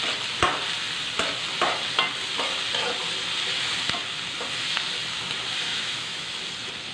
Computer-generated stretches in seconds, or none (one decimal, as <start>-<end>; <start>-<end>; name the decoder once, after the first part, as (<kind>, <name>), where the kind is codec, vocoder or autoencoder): 5.7-6.4 (autoencoder, DAC-VAE)